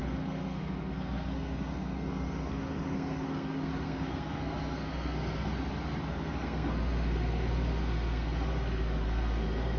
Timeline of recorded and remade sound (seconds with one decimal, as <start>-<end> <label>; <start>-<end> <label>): 0.0-5.5 remade; 5.5-6.1 recorded; 6.1-9.8 remade